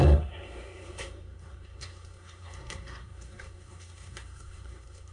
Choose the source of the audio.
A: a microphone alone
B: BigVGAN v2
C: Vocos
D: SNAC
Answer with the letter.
D